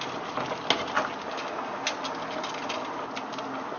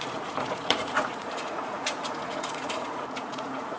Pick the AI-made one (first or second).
second